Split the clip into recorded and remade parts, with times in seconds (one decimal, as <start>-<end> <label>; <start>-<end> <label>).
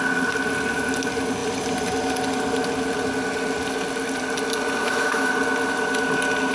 0.0-4.8 recorded; 4.8-5.3 remade; 5.3-6.5 recorded